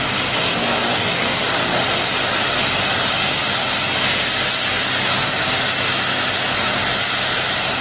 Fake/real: real